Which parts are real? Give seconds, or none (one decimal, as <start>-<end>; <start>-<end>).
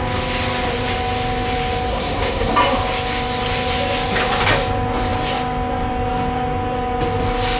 0.0-1.9; 2.5-7.6